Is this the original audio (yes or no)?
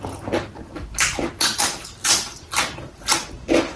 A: yes